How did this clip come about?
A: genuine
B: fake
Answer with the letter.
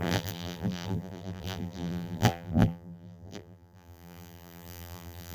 B